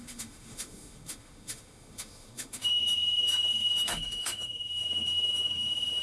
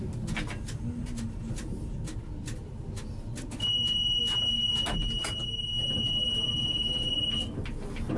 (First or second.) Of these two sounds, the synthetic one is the first